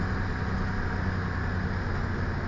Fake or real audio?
real